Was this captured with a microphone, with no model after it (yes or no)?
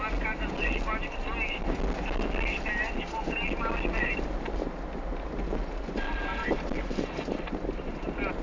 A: yes